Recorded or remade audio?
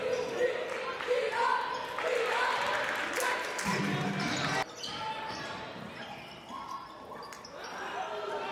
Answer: recorded